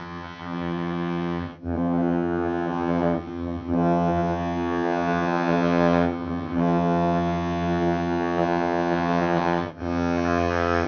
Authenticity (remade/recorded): remade